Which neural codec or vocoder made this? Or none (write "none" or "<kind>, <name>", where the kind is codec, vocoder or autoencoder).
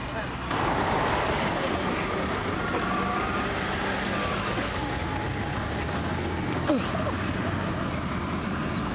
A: none